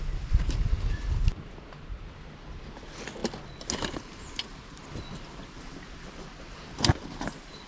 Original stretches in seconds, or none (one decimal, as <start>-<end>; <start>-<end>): 0.0-7.7